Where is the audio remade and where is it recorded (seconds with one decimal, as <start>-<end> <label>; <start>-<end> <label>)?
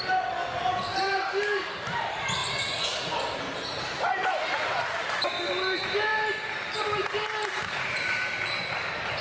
0.0-0.9 recorded; 0.9-1.7 remade; 1.7-6.1 recorded; 6.1-9.2 remade